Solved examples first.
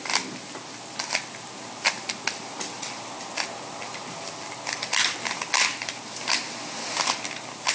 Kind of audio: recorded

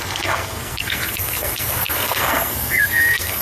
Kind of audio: remade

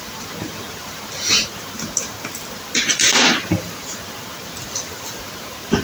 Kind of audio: remade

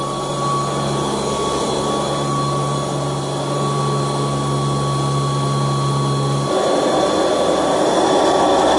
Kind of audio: recorded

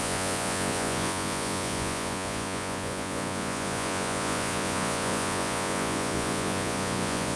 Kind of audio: remade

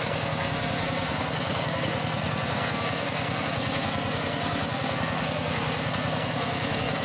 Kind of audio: remade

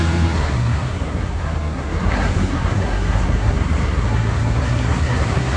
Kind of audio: remade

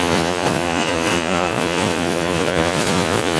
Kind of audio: remade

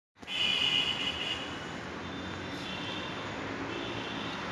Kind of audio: recorded